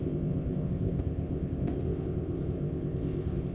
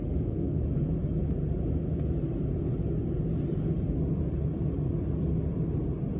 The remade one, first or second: first